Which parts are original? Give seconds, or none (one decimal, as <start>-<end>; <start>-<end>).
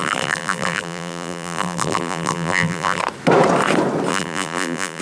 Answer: 3.0-4.1